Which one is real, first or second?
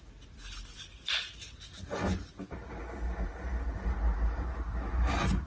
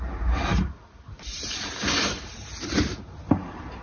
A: first